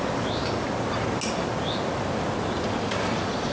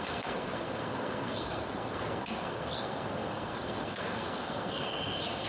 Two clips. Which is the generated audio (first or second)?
second